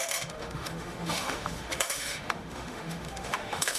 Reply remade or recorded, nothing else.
remade